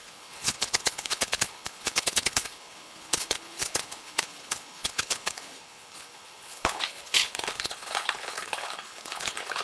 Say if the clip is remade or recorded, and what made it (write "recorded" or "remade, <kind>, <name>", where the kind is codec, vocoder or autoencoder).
remade, codec, HILCodec